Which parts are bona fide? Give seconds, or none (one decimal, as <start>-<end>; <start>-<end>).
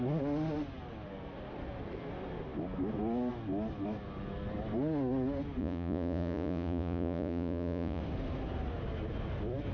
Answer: 0.0-5.6; 8.0-9.7